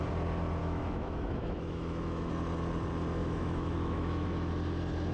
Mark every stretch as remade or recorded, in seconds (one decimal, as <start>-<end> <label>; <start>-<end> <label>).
0.0-0.6 recorded; 0.6-2.3 remade; 2.3-3.2 recorded; 3.2-4.5 remade; 4.5-5.1 recorded